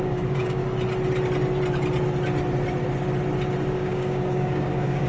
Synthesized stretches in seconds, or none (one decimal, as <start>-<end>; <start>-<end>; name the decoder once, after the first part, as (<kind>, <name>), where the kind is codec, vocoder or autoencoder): 0.0-0.6 (codec, DAC); 3.7-5.1